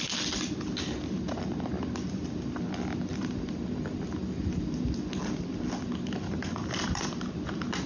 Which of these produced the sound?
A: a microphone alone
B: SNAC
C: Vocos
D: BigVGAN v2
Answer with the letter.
A